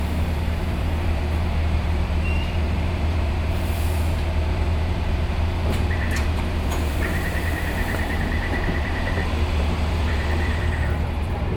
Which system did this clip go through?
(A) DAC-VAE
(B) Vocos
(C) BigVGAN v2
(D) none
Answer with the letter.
C